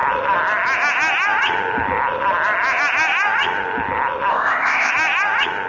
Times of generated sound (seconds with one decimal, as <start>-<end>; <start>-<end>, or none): 4.3-4.9